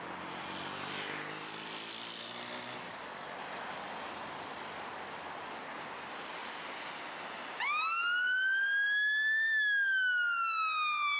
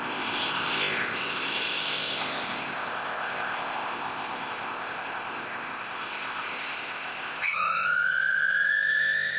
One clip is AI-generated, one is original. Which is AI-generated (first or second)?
second